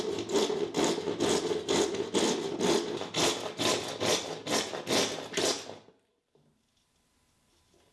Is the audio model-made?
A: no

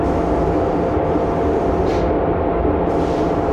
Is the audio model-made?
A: no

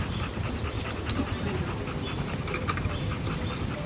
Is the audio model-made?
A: yes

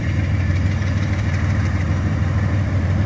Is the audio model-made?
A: yes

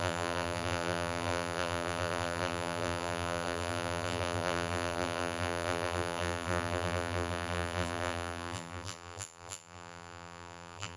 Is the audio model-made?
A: yes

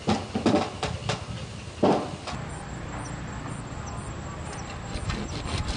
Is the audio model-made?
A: no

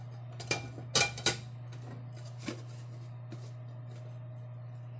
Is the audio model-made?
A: no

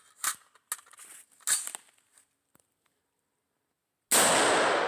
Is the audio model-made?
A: no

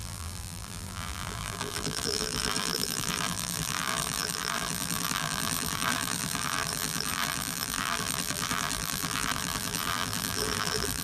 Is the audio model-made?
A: yes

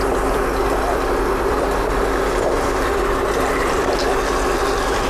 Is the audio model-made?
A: yes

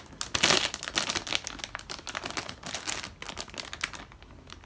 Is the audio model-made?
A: no